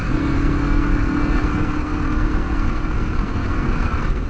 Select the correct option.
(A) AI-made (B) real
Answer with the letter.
A